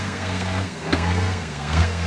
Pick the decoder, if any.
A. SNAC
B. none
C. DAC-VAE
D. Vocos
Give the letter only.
A